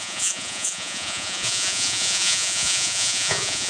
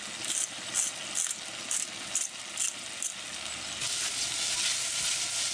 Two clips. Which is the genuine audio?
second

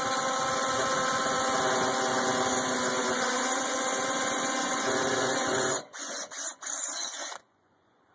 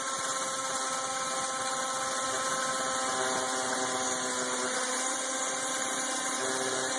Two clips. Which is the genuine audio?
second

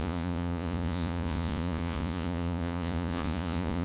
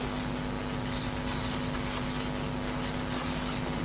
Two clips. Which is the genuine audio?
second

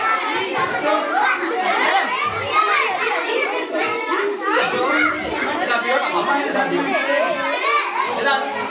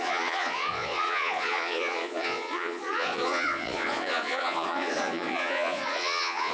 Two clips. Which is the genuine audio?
first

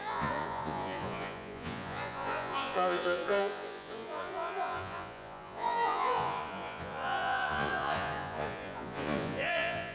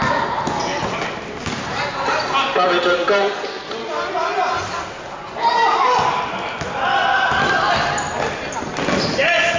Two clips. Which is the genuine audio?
second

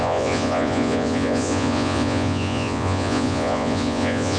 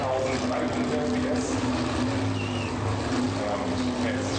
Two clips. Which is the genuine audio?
second